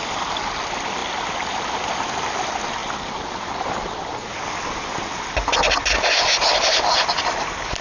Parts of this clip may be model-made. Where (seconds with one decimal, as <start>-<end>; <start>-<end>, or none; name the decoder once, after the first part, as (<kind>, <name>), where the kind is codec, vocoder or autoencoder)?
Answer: none